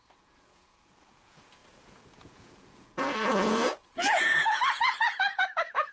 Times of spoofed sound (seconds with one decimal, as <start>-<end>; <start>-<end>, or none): 0.0-5.9